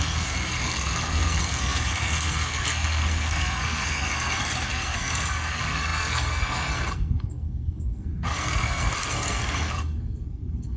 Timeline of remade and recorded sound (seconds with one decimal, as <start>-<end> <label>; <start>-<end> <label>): 0.0-10.8 remade